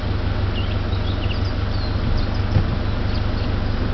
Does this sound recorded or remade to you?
recorded